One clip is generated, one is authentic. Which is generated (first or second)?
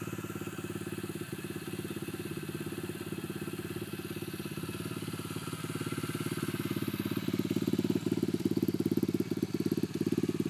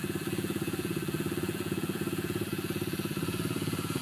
second